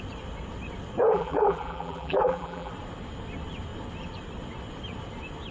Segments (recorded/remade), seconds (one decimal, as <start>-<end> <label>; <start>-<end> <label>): 0.0-1.1 recorded; 1.1-2.7 remade; 2.7-5.5 recorded